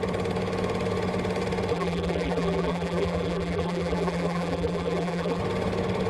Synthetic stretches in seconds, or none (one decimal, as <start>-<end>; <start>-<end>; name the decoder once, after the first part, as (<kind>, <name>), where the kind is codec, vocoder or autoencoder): 1.7-5.4 (vocoder, BigVGAN v2)